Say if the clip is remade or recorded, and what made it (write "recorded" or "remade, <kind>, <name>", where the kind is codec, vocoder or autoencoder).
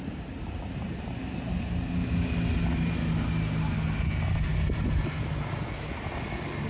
recorded